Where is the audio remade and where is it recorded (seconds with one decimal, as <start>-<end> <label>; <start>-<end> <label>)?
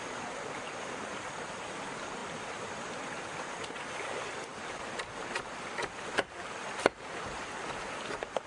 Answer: 0.0-8.5 recorded